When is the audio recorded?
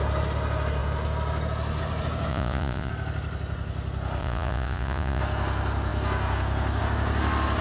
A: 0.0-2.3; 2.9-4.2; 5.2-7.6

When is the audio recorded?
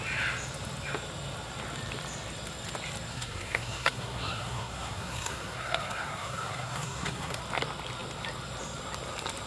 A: 0.0-3.1; 7.4-9.5